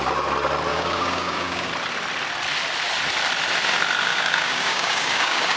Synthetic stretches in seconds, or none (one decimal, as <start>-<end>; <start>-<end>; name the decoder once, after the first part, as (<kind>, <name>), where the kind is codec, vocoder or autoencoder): 0.7-1.7 (codec, DAC); 4.1-5.6